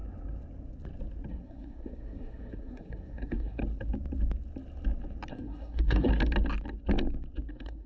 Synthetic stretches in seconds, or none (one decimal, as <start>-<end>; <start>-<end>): 1.3-3.6; 5.3-6.1; 7.5-7.9